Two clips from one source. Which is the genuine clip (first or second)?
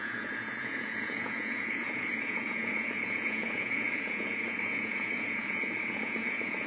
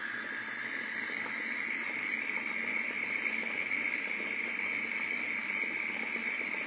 second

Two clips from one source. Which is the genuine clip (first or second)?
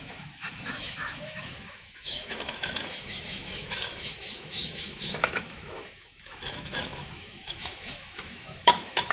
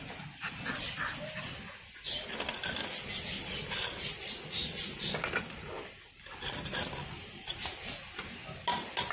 second